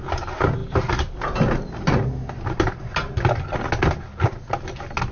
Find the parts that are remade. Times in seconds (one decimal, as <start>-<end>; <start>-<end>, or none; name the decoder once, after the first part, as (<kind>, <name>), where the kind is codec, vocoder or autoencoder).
none